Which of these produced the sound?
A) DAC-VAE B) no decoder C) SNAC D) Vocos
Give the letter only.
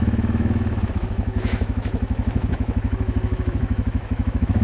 A